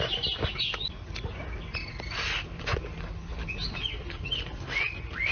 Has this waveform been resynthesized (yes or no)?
no